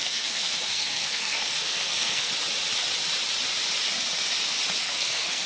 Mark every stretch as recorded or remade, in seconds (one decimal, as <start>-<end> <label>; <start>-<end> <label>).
0.0-2.3 remade; 2.3-4.8 recorded; 4.8-5.5 remade